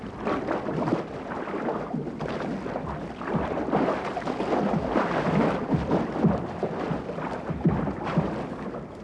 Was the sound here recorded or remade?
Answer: recorded